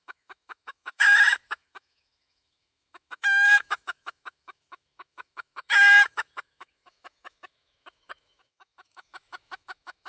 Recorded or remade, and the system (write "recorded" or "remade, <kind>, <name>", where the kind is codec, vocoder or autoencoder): remade, autoencoder, DAC-VAE